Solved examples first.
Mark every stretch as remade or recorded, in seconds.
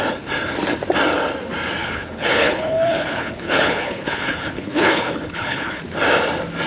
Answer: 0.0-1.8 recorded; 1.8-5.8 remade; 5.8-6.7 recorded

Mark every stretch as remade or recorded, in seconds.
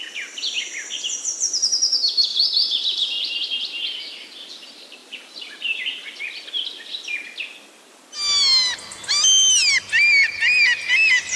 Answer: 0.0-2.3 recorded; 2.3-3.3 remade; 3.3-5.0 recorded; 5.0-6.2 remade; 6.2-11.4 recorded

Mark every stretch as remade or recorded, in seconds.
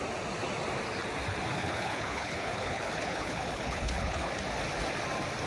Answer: 0.0-1.6 recorded; 1.6-4.3 remade; 4.3-5.5 recorded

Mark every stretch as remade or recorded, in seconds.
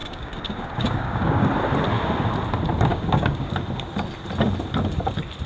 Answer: 0.0-1.5 remade; 1.5-2.9 recorded; 2.9-3.5 remade; 3.5-5.5 recorded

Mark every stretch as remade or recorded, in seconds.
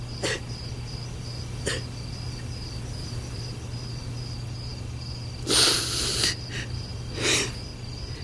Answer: 0.0-8.2 recorded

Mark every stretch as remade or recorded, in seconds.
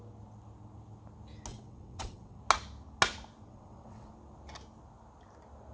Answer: 0.0-1.5 recorded; 1.5-2.4 remade; 2.4-3.5 recorded; 3.5-4.1 remade; 4.1-5.7 recorded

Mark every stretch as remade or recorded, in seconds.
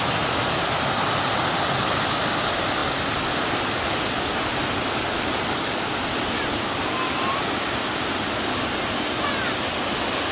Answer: 0.0-10.3 recorded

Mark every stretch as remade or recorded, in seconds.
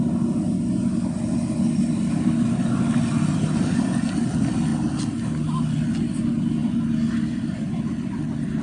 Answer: 0.0-8.6 recorded